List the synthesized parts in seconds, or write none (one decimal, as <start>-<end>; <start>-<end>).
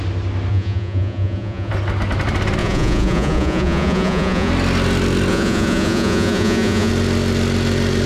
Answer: 0.5-1.7; 2.6-4.5; 5.3-6.9